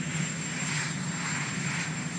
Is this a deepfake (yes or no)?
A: no